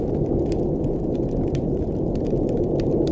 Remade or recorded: recorded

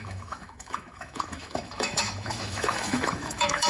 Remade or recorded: remade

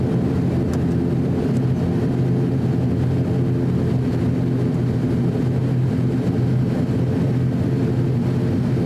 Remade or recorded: recorded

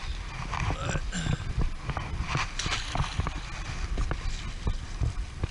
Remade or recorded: recorded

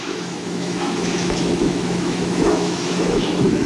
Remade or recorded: remade